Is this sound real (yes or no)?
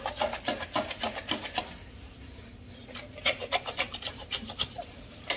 no